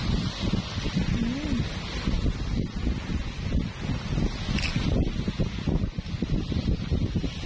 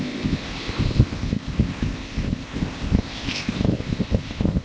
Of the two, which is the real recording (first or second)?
first